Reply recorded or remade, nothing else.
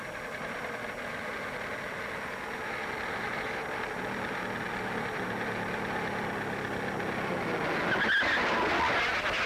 recorded